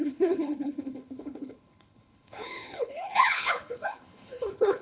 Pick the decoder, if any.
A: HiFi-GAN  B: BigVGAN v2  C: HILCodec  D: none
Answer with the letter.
C